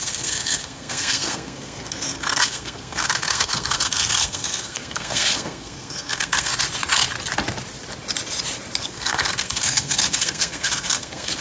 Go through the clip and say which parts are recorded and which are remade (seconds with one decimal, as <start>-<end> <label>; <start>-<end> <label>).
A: 0.0-6.5 remade; 6.5-8.8 recorded; 8.8-11.4 remade

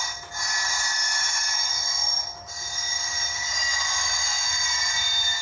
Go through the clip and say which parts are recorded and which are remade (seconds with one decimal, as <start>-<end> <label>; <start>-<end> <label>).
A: 0.0-5.4 recorded